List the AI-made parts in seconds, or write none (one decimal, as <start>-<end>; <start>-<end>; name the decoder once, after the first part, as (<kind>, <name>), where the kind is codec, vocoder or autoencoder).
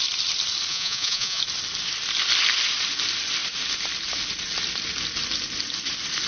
0.7-1.4 (vocoder, Vocos)